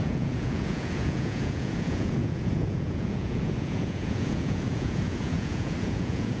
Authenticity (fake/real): fake